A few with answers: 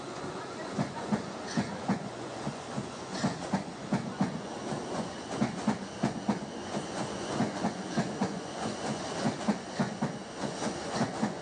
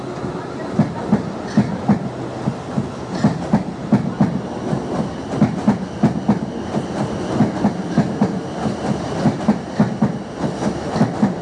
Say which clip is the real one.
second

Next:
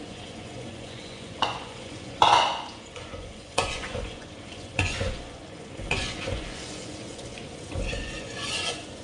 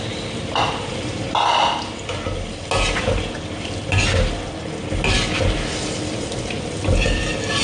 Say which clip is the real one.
second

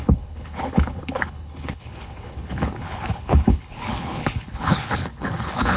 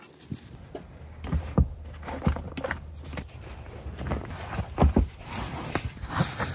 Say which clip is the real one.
second